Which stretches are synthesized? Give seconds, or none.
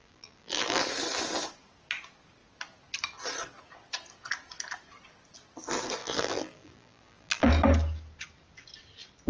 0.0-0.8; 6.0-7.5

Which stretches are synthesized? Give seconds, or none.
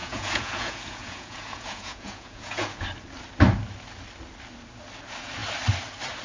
0.0-2.8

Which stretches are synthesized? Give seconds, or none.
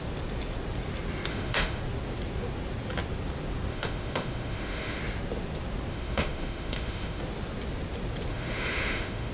1.3-1.8; 3.7-5.0; 5.9-7.2; 8.3-9.3